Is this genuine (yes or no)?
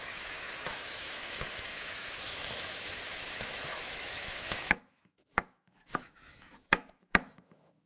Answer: no